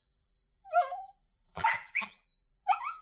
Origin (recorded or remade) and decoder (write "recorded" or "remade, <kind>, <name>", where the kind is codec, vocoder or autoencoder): remade, vocoder, BigVGAN v2